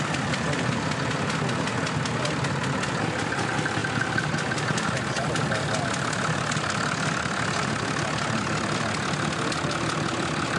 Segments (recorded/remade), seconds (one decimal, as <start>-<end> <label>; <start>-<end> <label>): 0.0-10.6 recorded